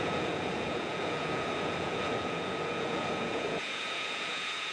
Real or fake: fake